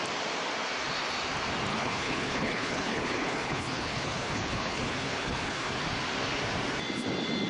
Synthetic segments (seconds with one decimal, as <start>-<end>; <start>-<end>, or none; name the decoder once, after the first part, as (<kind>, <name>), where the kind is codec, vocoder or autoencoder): 1.7-5.8 (codec, HILCodec)